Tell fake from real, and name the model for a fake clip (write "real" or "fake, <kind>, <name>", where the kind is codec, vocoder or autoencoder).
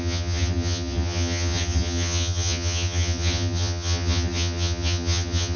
fake, vocoder, HiFi-GAN